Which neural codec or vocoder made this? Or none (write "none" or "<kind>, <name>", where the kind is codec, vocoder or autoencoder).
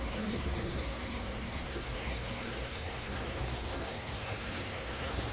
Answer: codec, SNAC